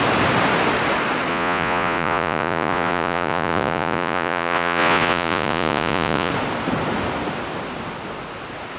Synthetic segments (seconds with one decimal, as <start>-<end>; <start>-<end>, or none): 1.3-6.3